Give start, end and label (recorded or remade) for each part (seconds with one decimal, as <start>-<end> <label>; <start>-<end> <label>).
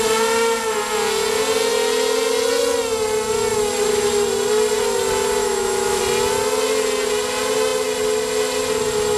0.0-5.4 recorded; 5.4-6.0 remade; 6.0-9.2 recorded